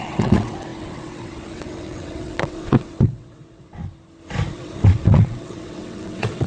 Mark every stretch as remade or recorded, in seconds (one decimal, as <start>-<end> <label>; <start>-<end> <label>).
0.0-3.8 remade; 3.8-4.5 recorded; 4.5-6.5 remade